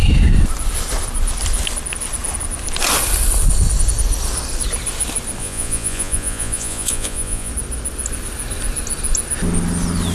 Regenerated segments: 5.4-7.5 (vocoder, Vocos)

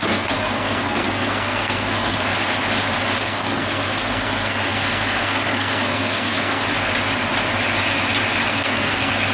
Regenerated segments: 0.0-2.3 (codec, SNAC); 3.2-6.6; 8.5-9.3

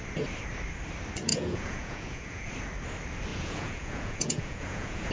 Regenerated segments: 1.3-2.5 (vocoder, Vocos); 3.3-5.1

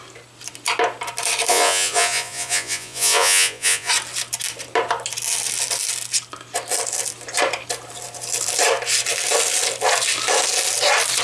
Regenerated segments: 1.5-3.9 (vocoder, Vocos)

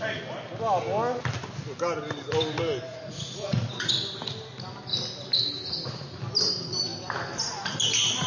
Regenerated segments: 2.9-3.9 (vocoder, Vocos); 5.7-6.2